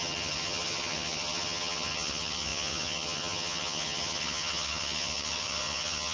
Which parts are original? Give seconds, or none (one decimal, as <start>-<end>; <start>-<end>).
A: none